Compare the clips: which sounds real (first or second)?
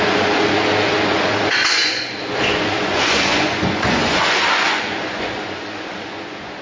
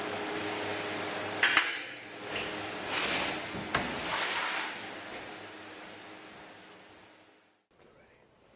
second